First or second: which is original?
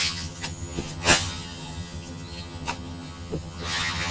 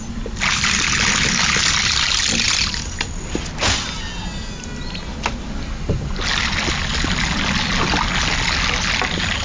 second